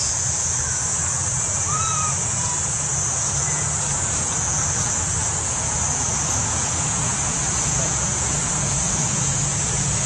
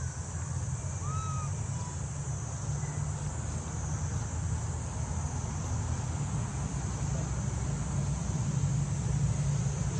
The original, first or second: second